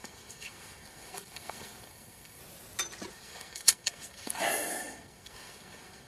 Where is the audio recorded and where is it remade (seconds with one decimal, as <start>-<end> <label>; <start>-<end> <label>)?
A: 0.0-2.4 remade; 2.4-3.1 recorded; 3.1-6.1 remade